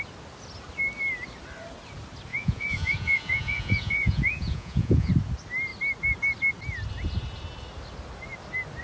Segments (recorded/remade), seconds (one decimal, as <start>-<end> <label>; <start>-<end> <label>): 0.0-2.3 recorded; 2.3-5.1 remade; 5.1-8.8 recorded